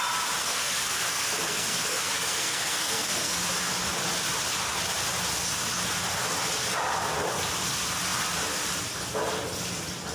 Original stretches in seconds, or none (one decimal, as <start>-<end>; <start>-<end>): 0.0-0.4; 3.4-10.1